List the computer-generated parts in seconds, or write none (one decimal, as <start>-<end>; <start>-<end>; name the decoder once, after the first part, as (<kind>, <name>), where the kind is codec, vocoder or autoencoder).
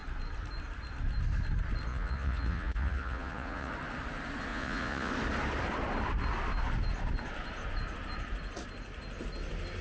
1.9-3.7 (vocoder, Vocos); 4.5-5.1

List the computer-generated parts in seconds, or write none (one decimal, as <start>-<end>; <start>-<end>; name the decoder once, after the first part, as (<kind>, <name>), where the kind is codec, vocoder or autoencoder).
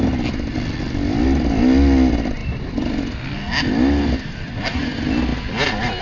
none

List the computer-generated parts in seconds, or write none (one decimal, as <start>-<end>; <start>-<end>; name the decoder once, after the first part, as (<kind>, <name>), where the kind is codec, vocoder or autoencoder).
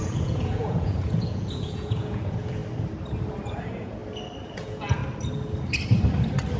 0.0-2.6 (vocoder, Vocos); 3.6-4.0; 4.5-5.0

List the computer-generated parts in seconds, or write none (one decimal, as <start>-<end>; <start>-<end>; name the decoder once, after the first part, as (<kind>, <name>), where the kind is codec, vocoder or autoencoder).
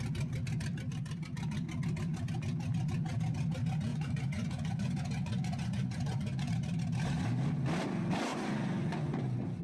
3.9-6.5 (vocoder, Vocos); 8.3-9.6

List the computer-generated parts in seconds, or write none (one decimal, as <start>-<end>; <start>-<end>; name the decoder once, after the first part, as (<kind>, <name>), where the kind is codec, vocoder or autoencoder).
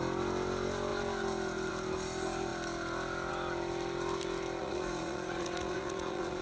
4.6-6.4 (vocoder, Vocos)